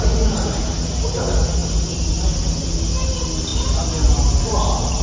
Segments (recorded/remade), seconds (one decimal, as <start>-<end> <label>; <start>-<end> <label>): 0.0-5.0 recorded